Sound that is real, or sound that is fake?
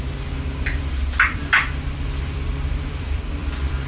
fake